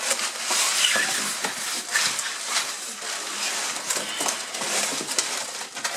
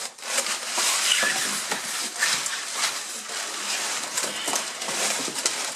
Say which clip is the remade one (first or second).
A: second